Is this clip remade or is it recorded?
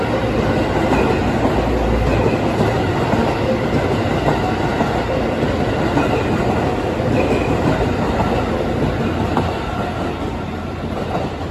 recorded